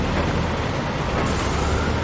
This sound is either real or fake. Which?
real